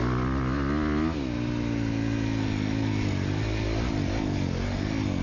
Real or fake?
real